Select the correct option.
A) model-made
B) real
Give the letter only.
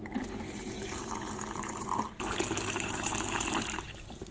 A